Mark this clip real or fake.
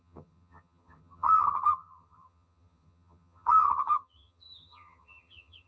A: fake